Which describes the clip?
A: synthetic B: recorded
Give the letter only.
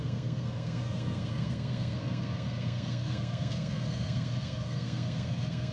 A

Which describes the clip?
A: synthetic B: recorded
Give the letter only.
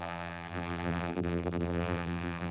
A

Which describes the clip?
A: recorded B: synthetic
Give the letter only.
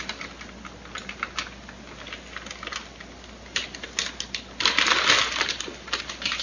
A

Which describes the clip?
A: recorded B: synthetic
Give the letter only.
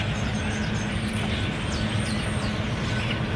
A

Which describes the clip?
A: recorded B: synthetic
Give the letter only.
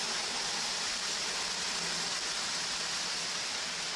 A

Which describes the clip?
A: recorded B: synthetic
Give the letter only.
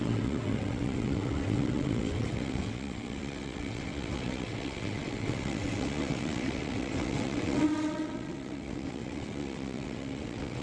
B